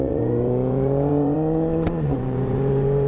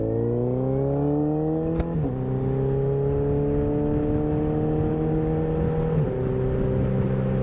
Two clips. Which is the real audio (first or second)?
second